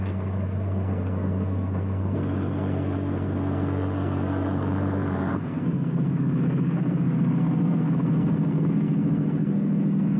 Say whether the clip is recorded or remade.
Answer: remade